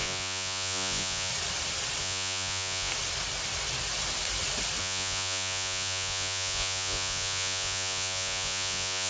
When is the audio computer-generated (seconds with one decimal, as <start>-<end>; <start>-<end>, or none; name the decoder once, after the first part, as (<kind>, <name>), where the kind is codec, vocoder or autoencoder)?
0.0-1.3 (vocoder, Vocos); 2.0-2.9; 4.8-9.1